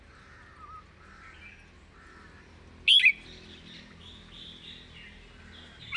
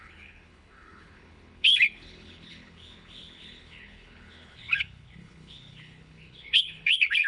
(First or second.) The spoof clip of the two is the second